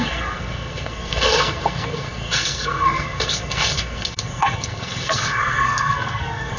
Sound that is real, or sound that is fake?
fake